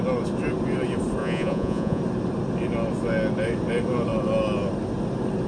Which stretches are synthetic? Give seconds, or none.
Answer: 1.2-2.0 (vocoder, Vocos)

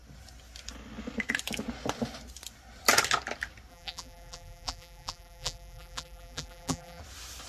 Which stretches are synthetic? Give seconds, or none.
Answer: 3.7-7.0 (vocoder, BigVGAN v2)

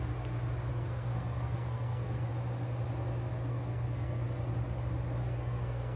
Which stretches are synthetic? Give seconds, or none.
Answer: 0.7-2.3 (codec, SNAC); 3.5-4.2; 5.2-6.0

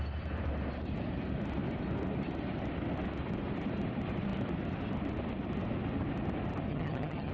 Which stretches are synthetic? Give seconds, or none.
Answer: 6.7-7.3 (vocoder, HiFi-GAN)

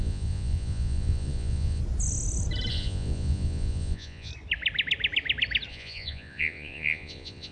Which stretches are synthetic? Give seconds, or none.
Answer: 0.0-1.8 (vocoder, Vocos); 2.7-4.3; 5.7-7.5